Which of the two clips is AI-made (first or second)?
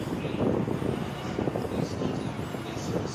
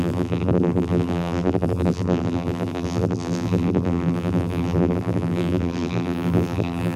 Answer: second